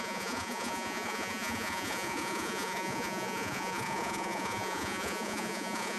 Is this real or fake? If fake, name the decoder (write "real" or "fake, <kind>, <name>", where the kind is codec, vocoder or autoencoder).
fake, vocoder, Vocos